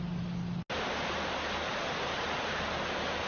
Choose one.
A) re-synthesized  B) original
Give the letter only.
B